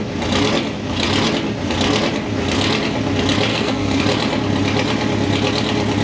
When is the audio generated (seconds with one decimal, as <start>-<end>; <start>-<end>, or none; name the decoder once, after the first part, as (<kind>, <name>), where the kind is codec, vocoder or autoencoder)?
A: 3.5-4.0 (codec, SNAC)